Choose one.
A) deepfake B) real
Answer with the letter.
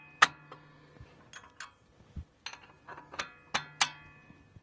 B